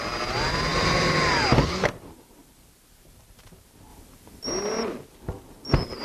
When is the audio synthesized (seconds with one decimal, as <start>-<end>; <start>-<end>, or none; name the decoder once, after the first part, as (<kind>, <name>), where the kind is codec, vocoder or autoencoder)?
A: none